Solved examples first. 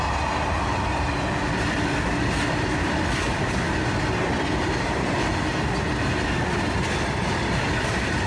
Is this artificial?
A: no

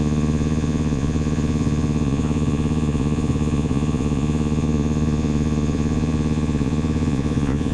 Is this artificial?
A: yes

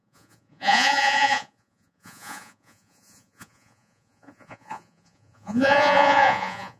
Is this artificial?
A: yes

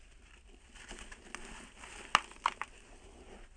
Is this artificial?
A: no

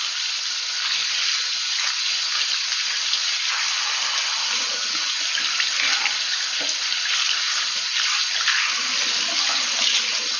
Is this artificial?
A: no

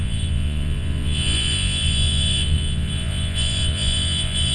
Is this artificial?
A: yes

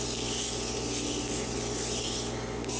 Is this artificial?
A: no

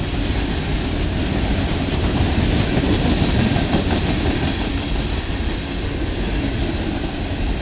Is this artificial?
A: no